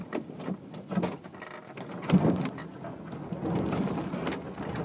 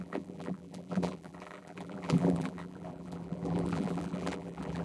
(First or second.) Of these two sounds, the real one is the first